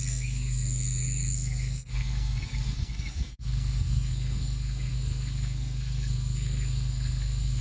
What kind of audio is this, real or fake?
fake